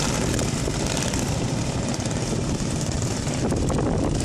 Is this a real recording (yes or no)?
yes